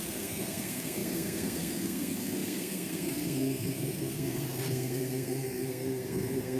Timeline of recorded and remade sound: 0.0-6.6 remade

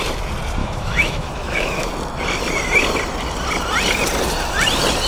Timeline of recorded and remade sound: 0.0-0.6 recorded; 0.6-1.9 remade; 1.9-5.1 recorded

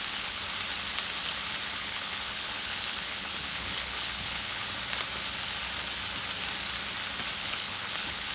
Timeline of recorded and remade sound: 0.0-0.4 remade; 0.4-1.8 recorded; 1.8-4.6 remade; 4.6-7.4 recorded; 7.4-8.3 remade

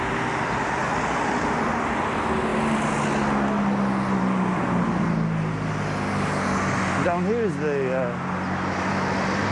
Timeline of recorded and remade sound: 0.0-9.5 recorded

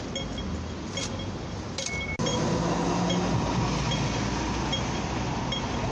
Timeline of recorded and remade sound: 0.0-5.9 recorded

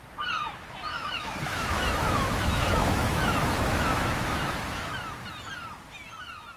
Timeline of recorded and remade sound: 0.0-0.9 recorded; 0.9-4.9 remade; 4.9-6.6 recorded